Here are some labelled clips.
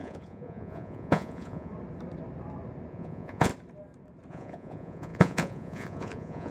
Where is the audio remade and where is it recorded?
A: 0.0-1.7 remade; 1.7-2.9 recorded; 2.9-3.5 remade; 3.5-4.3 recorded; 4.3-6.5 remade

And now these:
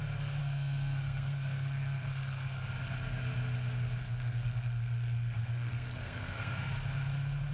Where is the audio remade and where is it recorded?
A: 0.0-0.4 recorded; 0.4-2.7 remade; 2.7-4.0 recorded; 4.0-6.7 remade; 6.7-7.5 recorded

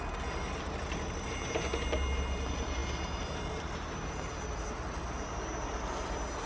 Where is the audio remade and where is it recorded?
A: 0.0-6.5 recorded

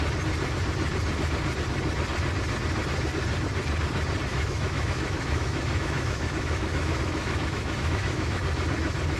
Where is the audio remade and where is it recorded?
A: 0.0-4.3 recorded; 4.3-8.4 remade; 8.4-9.2 recorded

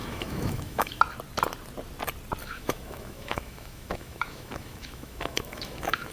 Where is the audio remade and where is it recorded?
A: 0.0-1.0 remade; 1.0-2.4 recorded; 2.4-6.1 remade